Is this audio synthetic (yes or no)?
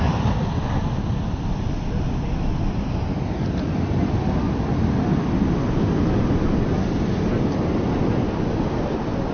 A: no